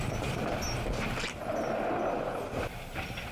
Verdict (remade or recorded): recorded